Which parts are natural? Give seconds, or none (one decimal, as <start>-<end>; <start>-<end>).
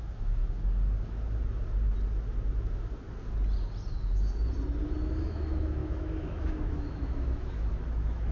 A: 0.4-5.3